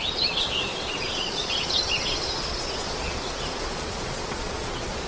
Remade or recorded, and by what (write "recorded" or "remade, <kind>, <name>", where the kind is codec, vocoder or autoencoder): remade, vocoder, Vocos